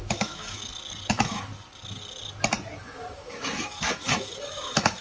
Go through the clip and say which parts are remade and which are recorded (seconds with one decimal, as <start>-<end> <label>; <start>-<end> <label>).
0.0-0.6 remade; 0.6-1.1 recorded; 1.1-1.5 remade; 1.5-2.8 recorded; 2.8-5.0 remade